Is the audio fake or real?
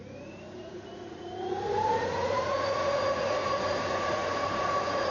fake